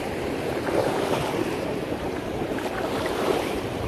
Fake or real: fake